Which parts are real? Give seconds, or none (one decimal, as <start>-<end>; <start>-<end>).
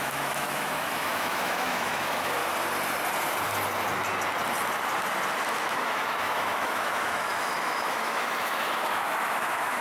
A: 2.4-5.5